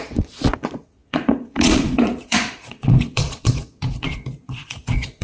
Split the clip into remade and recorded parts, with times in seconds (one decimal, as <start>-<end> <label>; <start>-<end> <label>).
0.0-5.2 remade